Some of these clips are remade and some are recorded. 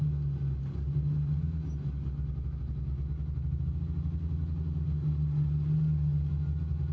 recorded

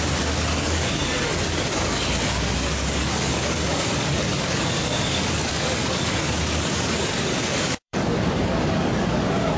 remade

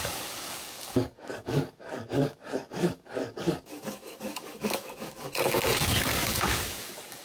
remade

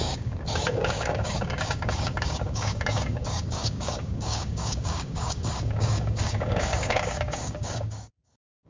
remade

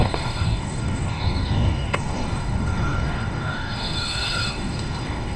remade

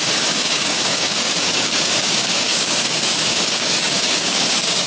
remade